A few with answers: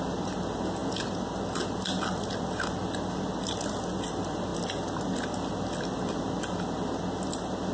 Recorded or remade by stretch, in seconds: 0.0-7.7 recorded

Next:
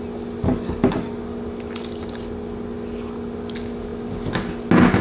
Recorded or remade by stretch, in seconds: 0.0-5.0 recorded

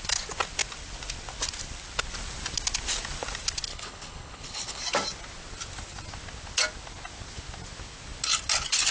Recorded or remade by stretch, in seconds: 0.0-3.7 recorded; 3.7-4.8 remade; 4.8-8.9 recorded